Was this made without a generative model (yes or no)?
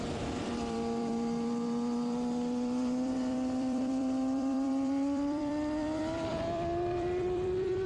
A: no